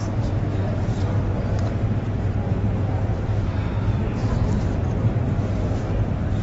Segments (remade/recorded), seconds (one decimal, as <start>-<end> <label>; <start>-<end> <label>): 0.0-0.5 recorded; 0.5-1.2 remade; 1.2-1.6 recorded; 1.6-5.4 remade; 5.4-6.4 recorded